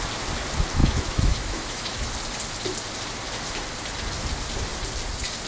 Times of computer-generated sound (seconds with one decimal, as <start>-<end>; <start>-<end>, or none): 0.8-2.1